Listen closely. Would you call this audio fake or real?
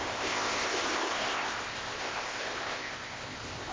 fake